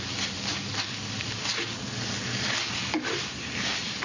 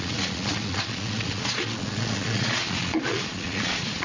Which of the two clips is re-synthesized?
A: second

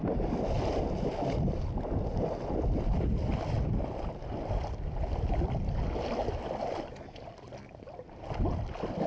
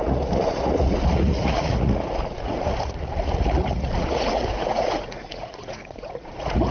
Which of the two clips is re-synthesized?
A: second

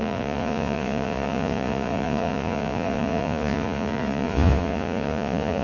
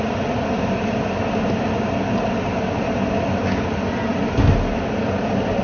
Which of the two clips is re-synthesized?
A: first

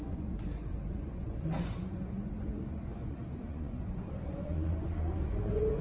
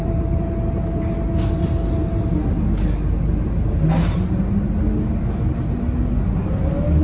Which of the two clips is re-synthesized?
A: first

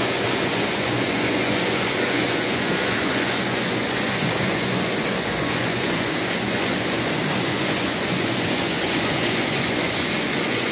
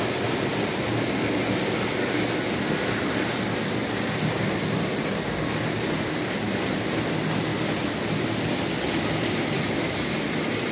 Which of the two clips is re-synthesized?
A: first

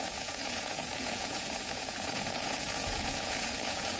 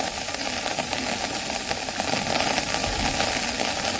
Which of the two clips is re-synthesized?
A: first